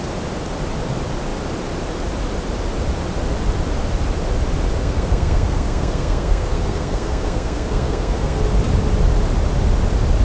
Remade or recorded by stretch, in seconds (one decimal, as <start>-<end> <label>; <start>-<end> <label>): 0.0-4.8 recorded; 4.8-8.4 remade; 8.4-10.2 recorded